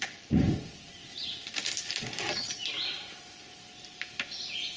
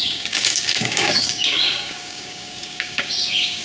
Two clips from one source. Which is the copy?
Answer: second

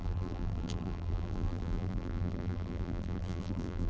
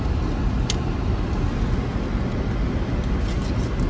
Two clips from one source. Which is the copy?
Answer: first